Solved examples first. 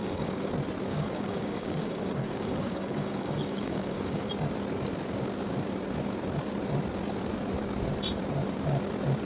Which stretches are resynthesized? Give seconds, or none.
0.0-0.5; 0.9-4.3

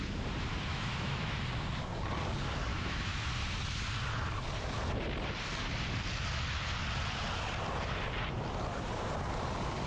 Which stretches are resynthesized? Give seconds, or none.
0.7-1.4; 2.7-3.3

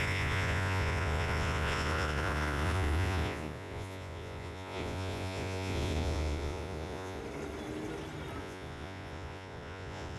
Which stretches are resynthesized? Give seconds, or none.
0.0-7.2; 8.4-10.2

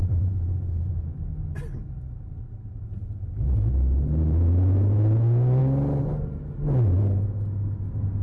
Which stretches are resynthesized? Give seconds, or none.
0.0-1.2

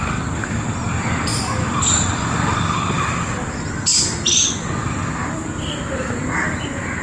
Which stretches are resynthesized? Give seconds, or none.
none